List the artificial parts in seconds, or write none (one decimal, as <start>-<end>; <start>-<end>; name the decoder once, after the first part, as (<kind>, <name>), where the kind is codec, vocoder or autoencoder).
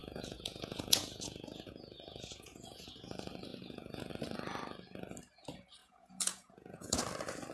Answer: 0.0-3.1 (vocoder, Vocos); 3.5-4.1; 5.8-7.0